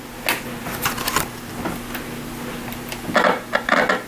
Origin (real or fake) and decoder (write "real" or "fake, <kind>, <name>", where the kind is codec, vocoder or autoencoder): real